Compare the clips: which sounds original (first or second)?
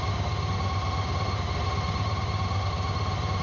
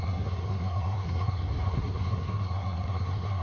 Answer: first